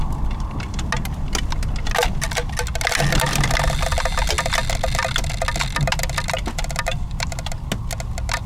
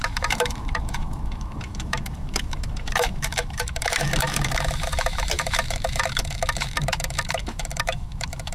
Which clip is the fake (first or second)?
second